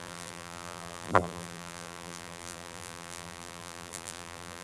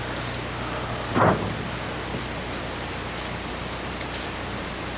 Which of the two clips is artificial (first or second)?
first